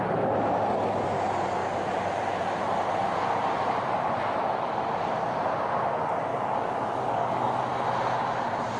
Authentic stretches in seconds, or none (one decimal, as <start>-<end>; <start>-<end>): 0.0-6.3; 7.6-8.8